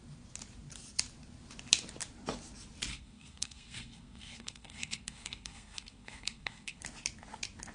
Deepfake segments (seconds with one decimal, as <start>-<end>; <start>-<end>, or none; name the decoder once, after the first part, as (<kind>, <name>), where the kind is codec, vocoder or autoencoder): 2.9-6.8 (codec, SNAC)